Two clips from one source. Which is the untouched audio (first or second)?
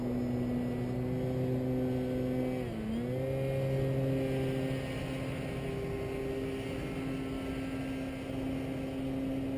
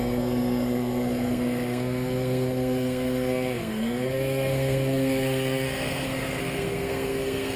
first